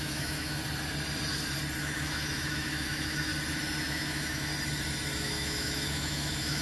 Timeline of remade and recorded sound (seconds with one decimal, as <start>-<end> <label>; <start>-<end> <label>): 0.0-0.6 remade; 0.6-1.8 recorded; 1.8-3.3 remade; 3.3-3.8 recorded; 3.8-4.5 remade; 4.5-5.2 recorded; 5.2-6.6 remade